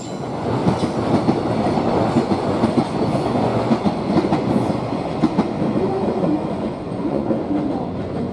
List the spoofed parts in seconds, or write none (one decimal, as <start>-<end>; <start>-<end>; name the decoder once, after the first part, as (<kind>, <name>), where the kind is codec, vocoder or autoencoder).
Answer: 0.0-0.6 (vocoder, Vocos); 2.0-8.3